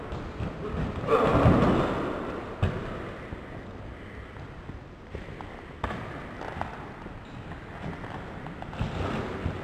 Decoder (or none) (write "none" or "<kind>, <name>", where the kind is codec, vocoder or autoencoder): none